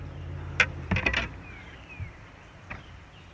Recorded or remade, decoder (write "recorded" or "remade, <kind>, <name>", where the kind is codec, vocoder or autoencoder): recorded